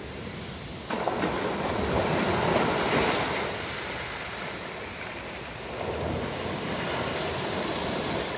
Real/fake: real